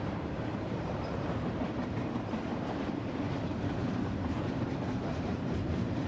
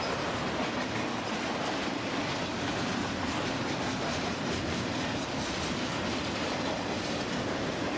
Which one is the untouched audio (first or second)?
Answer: second